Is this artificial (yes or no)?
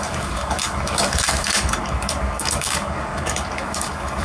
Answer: yes